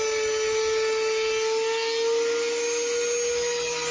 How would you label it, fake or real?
real